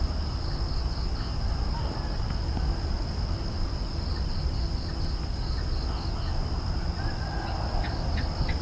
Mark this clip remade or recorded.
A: recorded